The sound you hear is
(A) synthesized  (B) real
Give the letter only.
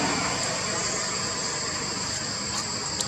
B